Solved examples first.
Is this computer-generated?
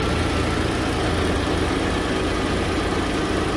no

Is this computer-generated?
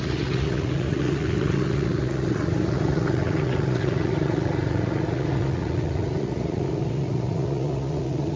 yes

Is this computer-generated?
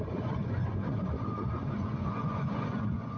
yes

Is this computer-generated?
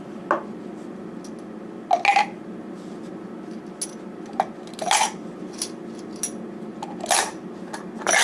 no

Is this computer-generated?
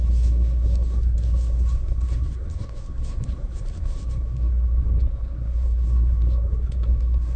yes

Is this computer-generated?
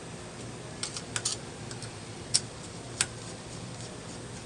no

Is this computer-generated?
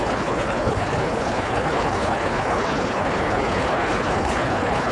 yes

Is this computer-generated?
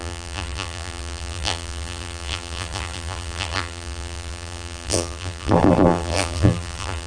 yes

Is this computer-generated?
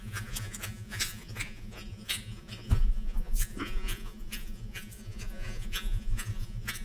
yes